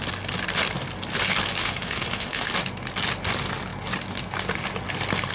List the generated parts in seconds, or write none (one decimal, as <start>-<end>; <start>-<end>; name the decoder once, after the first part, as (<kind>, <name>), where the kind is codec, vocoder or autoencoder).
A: 1.6-2.5 (autoencoder, DAC-VAE)

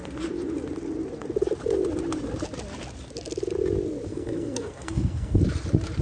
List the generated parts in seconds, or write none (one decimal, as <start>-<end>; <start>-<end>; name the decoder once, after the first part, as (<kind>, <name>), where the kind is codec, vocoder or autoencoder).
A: 4.1-5.4 (codec, SNAC)